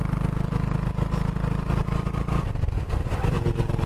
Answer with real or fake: real